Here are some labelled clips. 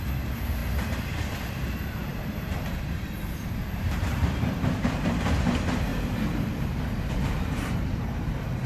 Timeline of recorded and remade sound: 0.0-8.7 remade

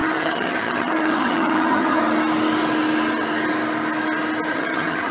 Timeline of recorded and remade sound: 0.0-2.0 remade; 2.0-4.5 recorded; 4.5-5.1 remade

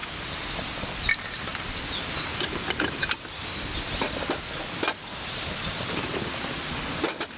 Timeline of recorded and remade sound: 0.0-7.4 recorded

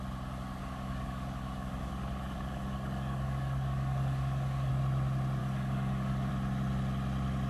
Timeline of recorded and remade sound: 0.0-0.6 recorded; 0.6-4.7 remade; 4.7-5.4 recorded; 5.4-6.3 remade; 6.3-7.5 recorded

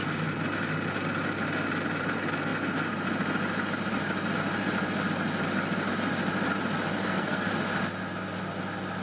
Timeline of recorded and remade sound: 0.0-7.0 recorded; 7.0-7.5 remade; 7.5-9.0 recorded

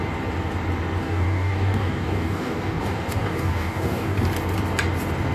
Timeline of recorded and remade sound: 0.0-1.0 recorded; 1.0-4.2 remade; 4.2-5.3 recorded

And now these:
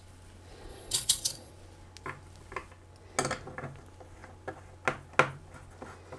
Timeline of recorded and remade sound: 0.0-0.7 recorded; 0.7-1.5 remade; 1.5-6.2 recorded

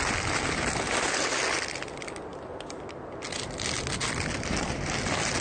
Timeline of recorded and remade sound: 0.0-5.4 recorded